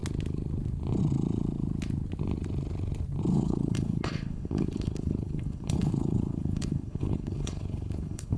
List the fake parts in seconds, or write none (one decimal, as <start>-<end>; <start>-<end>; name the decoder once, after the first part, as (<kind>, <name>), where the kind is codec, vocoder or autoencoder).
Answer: 3.3-8.4 (codec, HILCodec)